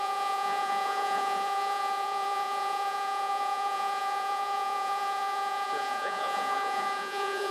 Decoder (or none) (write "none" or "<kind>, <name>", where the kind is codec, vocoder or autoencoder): vocoder, Vocos